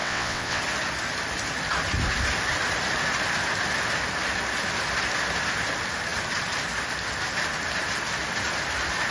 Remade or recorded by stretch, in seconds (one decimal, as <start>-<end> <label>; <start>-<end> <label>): 0.0-0.6 remade; 0.6-9.1 recorded